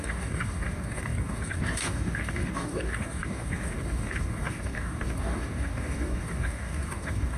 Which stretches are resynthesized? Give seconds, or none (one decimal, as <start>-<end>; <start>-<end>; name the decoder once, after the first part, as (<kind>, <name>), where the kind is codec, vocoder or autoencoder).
0.0-7.4 (codec, DAC)